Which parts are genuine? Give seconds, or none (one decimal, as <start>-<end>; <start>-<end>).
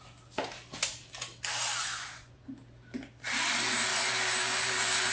0.0-1.8; 2.5-3.9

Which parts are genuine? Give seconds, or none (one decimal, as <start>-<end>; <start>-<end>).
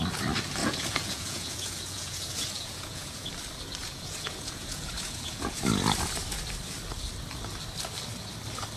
0.0-0.6; 3.3-3.8; 5.6-8.8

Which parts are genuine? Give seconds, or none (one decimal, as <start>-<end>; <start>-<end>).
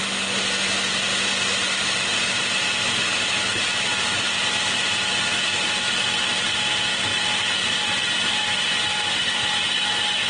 0.0-7.1; 9.6-10.3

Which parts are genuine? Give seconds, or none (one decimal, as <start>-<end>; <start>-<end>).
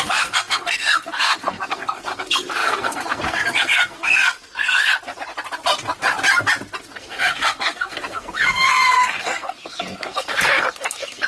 4.9-6.9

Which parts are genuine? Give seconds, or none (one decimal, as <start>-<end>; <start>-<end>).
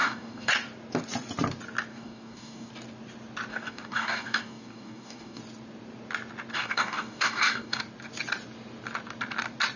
0.5-1.9; 2.7-3.5; 5.4-6.5; 7.8-9.8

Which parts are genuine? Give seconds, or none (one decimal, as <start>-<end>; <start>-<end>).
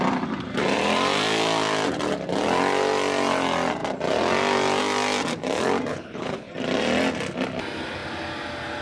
0.0-5.9; 6.5-8.8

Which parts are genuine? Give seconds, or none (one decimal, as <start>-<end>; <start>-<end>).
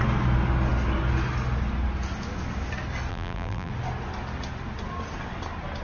0.0-3.1; 3.7-5.8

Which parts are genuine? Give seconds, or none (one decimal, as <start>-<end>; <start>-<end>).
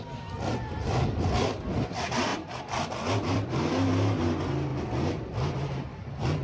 0.0-2.3; 3.5-4.7; 5.7-6.4